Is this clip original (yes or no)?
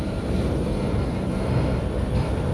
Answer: yes